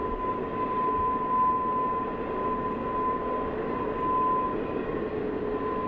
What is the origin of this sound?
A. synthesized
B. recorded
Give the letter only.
B